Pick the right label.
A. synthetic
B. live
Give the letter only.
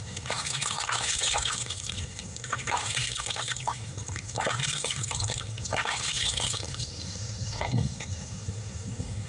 A